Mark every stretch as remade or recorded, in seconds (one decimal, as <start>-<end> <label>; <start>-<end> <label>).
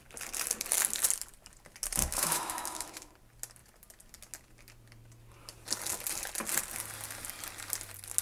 0.0-2.0 recorded; 2.0-3.1 remade; 3.1-8.2 recorded